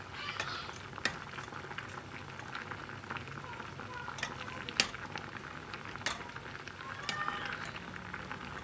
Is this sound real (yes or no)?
yes